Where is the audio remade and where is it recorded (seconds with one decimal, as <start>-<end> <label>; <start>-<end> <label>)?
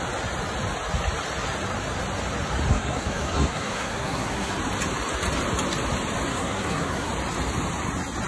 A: 0.0-2.7 recorded; 2.7-4.5 remade; 4.5-6.3 recorded; 6.3-7.1 remade; 7.1-8.3 recorded